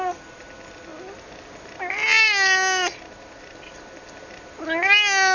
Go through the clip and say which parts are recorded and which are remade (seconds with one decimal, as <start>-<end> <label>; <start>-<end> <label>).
0.0-5.3 recorded